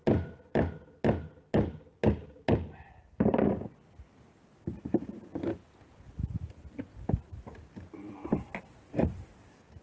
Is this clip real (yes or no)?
yes